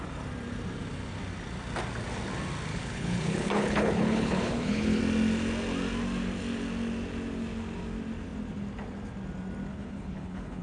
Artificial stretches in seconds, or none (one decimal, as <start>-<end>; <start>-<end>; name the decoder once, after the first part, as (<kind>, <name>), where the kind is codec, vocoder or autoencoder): 2.7-5.0 (codec, HILCodec); 9.7-10.6